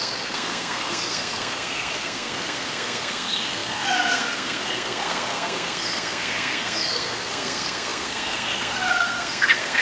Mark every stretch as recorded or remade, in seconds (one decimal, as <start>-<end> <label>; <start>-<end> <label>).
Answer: 0.0-9.8 remade